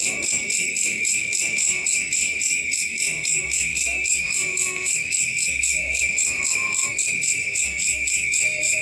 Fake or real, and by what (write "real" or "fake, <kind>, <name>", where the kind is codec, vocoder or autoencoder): fake, codec, SNAC